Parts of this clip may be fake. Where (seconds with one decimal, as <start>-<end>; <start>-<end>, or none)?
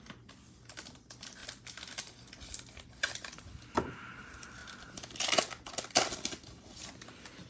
none